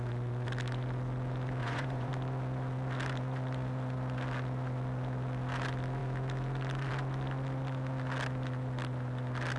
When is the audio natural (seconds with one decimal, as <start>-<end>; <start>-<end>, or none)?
0.0-1.6; 2.1-9.6